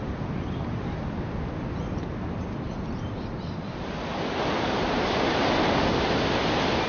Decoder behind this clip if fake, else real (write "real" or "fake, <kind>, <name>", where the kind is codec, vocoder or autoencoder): real